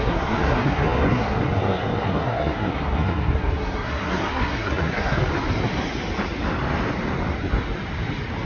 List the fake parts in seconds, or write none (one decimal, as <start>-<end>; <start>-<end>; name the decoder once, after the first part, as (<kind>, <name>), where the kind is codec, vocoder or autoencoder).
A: 0.0-5.2 (codec, SNAC)